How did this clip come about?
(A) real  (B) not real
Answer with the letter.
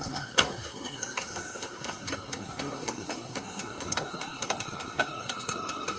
B